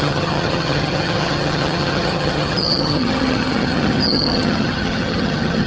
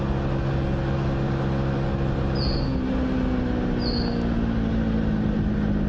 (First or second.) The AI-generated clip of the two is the first